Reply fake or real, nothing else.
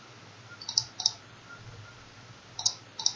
real